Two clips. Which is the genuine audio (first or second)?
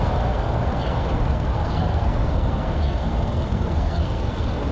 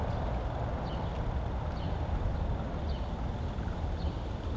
second